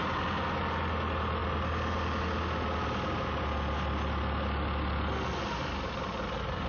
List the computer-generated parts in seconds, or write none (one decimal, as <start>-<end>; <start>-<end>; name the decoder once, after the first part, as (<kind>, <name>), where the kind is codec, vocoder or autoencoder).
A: none